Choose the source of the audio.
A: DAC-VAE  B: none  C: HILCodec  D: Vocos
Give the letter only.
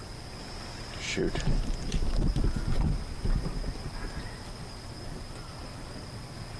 B